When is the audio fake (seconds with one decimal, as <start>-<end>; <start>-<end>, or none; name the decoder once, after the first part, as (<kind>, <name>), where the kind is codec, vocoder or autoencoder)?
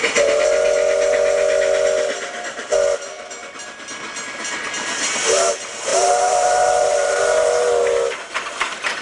5.9-7.2 (vocoder, BigVGAN v2)